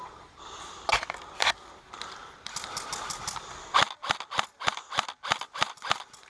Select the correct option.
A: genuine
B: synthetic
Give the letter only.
A